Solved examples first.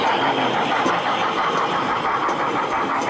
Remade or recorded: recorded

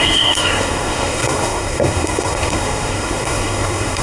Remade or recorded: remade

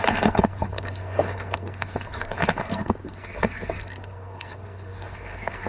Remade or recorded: remade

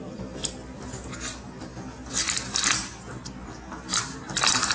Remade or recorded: recorded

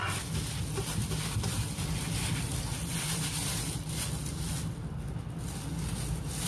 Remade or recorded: recorded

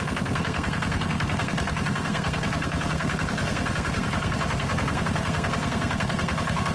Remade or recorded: remade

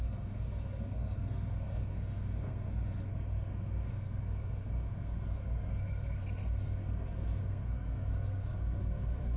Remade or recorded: remade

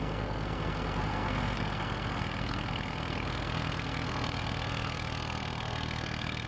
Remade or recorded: remade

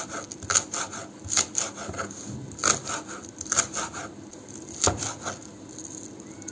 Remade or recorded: recorded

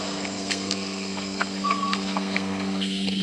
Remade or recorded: remade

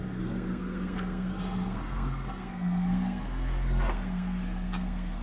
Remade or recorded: remade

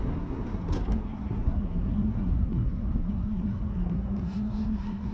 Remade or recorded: remade